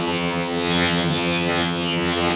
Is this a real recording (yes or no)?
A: no